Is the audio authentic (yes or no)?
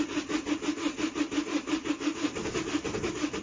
yes